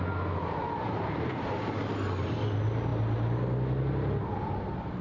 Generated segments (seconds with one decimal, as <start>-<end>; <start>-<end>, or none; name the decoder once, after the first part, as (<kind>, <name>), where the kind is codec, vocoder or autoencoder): none